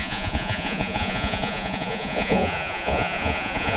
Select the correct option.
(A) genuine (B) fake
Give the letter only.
B